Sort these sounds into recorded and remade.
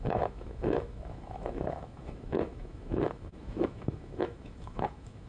remade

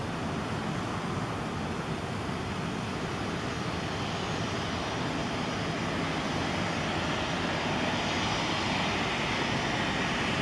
recorded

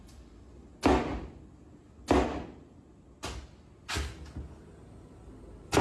recorded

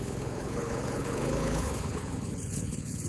remade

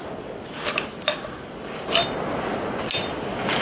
recorded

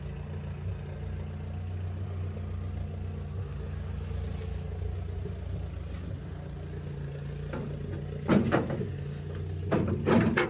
recorded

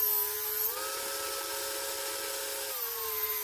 recorded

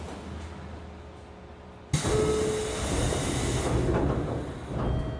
recorded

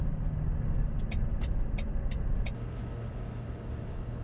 recorded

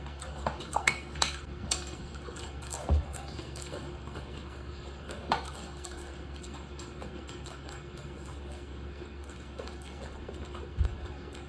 remade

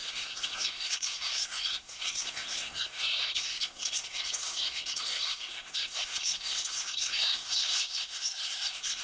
remade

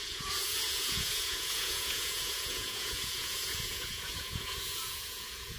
remade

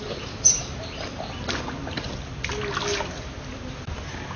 recorded